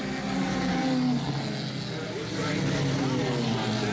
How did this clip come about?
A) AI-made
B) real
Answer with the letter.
B